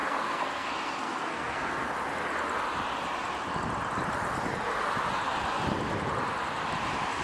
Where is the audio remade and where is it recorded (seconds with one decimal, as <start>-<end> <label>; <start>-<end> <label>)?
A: 0.0-1.9 remade; 1.9-7.2 recorded

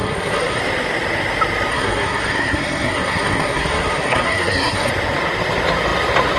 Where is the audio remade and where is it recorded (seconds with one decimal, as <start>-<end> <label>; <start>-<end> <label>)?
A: 0.0-0.6 remade; 0.6-1.7 recorded; 1.7-4.9 remade; 4.9-6.4 recorded

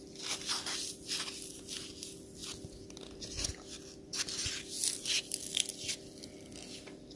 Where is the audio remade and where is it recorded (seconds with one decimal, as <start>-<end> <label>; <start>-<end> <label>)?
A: 0.0-7.2 recorded

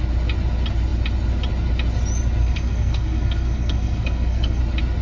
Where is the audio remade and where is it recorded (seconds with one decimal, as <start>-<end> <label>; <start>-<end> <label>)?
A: 0.0-2.4 recorded; 2.4-4.6 remade; 4.6-5.0 recorded